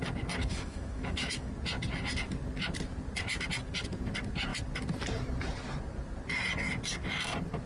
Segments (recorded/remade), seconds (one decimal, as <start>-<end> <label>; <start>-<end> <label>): 0.0-0.4 recorded; 0.4-1.5 remade; 1.5-7.7 recorded